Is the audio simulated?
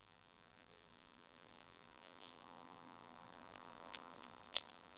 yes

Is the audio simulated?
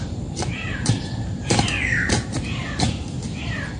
yes